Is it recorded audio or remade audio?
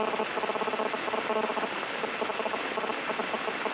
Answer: recorded